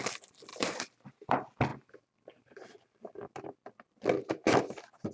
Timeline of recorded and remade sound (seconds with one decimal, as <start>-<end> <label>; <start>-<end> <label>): 0.0-0.5 recorded; 0.5-1.1 remade; 1.1-1.7 recorded; 1.7-4.6 remade; 4.6-5.1 recorded